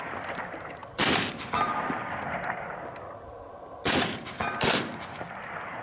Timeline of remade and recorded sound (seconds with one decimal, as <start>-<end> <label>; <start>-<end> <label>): 0.0-5.8 recorded